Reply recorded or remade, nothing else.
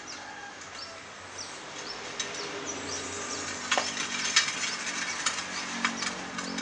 recorded